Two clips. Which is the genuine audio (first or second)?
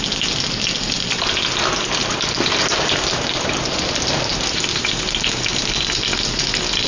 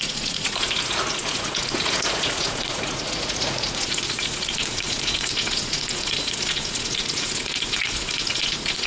first